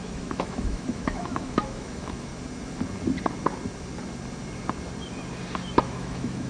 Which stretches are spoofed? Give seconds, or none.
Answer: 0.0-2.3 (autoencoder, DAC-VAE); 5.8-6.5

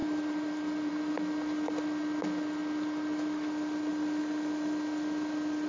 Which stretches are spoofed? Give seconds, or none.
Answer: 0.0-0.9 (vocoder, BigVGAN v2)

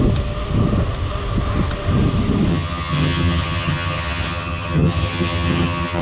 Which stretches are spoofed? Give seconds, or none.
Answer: 2.5-6.0 (vocoder, HiFi-GAN)

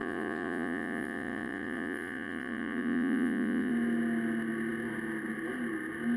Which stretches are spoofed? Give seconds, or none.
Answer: 0.0-3.7 (vocoder, Vocos)

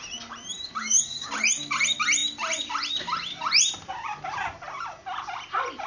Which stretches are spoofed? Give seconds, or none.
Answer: 0.8-1.3 (codec, DAC)